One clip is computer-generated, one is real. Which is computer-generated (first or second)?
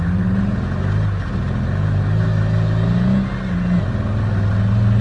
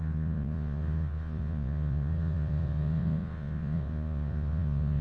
second